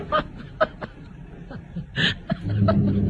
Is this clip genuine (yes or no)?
yes